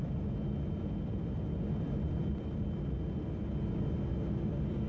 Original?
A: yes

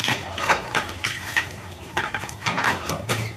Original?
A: no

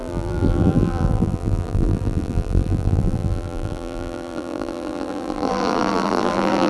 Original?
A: no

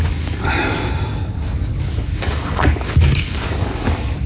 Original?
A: no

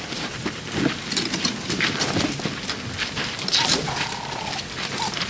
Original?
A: yes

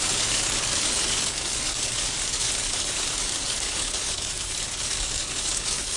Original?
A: no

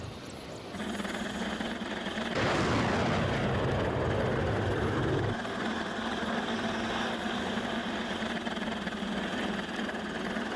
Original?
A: yes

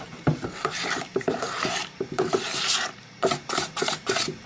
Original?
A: no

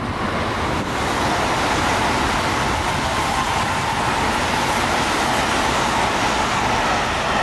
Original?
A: yes